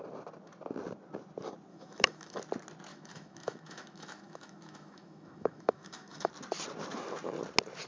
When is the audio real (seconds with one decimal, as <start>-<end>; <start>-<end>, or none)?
0.0-1.7; 2.4-2.9; 6.3-7.9